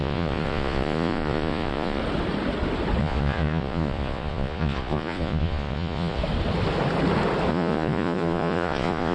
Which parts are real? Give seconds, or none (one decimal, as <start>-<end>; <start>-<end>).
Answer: 2.0-3.0; 6.2-7.5